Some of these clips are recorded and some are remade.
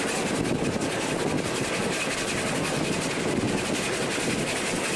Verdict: recorded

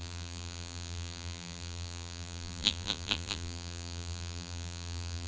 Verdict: remade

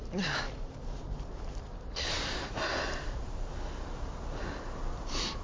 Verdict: remade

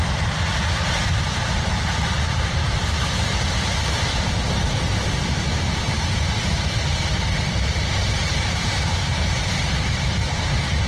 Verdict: remade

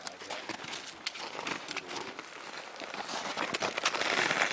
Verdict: recorded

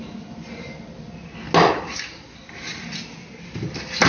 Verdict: recorded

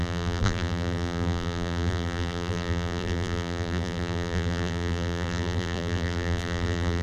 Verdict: remade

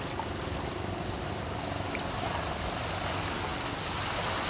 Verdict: recorded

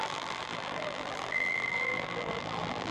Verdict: remade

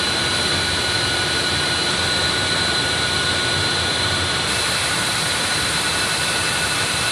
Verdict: remade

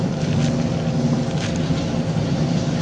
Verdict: remade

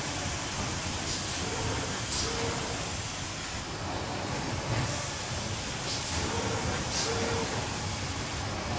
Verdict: recorded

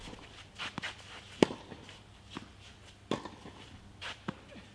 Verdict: recorded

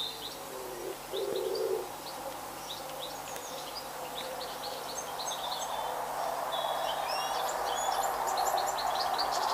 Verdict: recorded